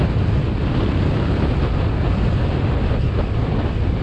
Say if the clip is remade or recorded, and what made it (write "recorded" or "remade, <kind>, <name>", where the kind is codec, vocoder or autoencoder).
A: recorded